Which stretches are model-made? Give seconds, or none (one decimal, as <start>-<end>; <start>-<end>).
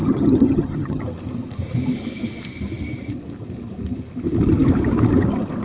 0.0-1.0